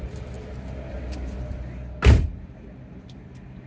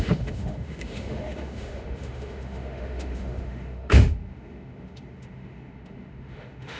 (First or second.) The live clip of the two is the first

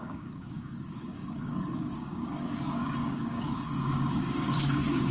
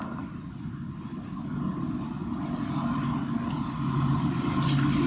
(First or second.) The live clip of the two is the second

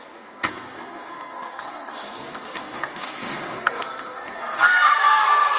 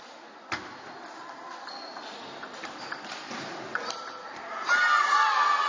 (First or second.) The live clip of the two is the second